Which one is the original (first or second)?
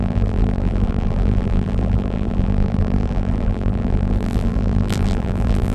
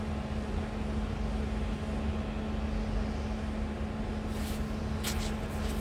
second